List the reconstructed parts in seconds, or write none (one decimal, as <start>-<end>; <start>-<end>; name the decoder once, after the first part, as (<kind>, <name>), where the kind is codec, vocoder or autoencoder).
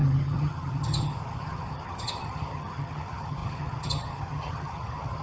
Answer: 0.0-5.2 (vocoder, HiFi-GAN)